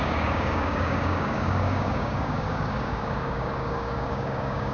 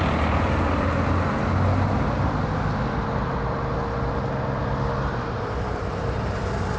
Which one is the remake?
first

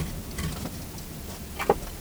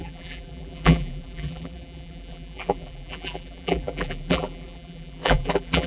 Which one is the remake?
second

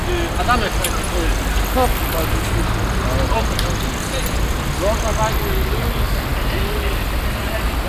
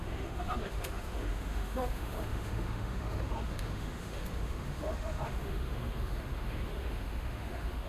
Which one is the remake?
second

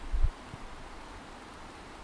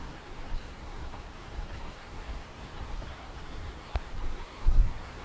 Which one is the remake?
second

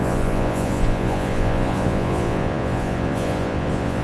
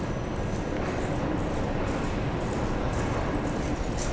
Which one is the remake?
first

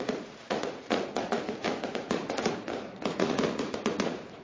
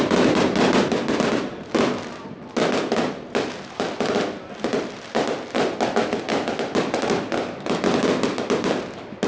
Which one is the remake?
first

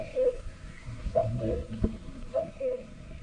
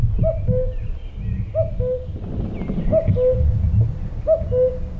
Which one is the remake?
first